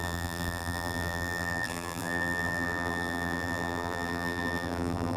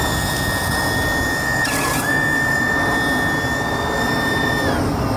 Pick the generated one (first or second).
first